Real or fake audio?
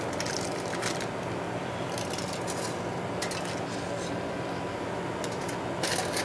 real